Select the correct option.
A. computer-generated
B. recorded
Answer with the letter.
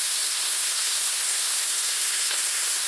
A